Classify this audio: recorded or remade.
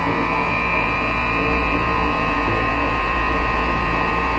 remade